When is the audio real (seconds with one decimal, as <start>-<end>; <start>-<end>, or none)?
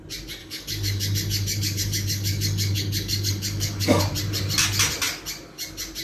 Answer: 0.0-0.4; 4.0-6.0